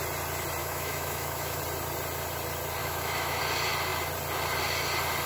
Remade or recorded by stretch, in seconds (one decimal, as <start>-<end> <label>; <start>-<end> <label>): 0.0-0.6 recorded; 0.6-1.6 remade; 1.6-2.8 recorded; 2.8-3.4 remade; 3.4-5.3 recorded